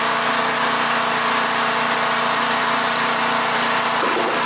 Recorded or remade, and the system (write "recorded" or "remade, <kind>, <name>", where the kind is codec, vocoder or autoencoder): recorded